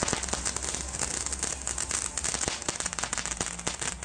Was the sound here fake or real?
real